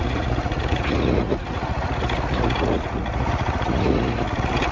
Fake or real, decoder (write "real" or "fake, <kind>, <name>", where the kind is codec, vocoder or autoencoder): fake, vocoder, Vocos